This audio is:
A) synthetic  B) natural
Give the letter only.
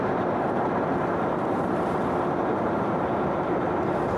B